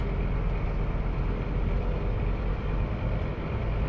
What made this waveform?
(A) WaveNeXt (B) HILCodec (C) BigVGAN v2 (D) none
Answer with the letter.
D